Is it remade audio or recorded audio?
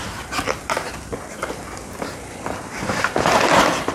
remade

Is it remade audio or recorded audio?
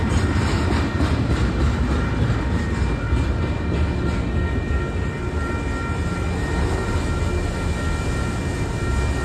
recorded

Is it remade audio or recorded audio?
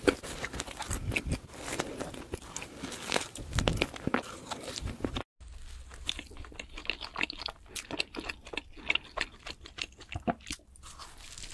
recorded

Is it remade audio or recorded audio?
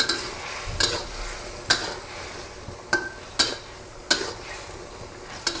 recorded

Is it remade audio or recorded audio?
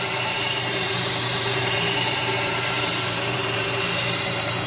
remade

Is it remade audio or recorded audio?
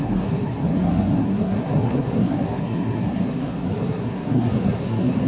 remade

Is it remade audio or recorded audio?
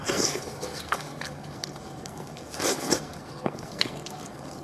remade